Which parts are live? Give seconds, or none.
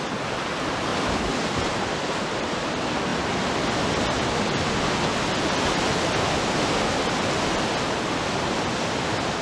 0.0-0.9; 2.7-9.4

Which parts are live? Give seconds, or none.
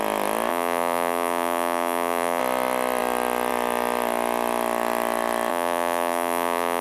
0.0-0.5; 2.4-5.5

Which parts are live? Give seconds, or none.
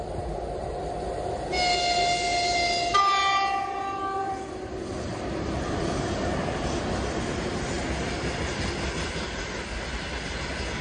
0.0-4.2; 5.9-10.8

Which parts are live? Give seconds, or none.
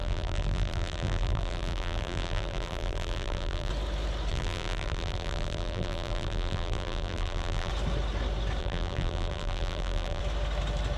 3.7-4.3; 7.7-8.6; 10.2-11.0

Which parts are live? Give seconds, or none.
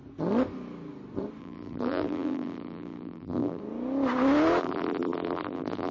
0.0-1.4; 3.6-4.6